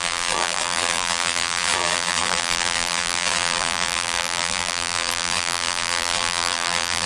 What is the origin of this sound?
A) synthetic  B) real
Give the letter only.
A